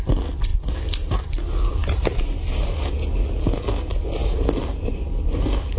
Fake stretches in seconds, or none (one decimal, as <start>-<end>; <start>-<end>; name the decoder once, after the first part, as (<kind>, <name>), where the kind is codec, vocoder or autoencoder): 1.8-2.5 (vocoder, BigVGAN v2)